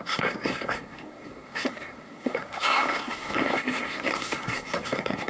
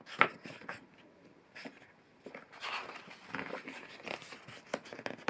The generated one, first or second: first